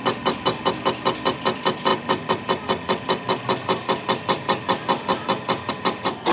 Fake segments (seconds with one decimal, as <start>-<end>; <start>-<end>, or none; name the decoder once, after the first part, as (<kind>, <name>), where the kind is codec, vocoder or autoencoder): none